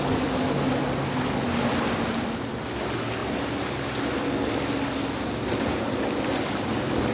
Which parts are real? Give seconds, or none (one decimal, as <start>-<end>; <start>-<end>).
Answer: 0.0-7.1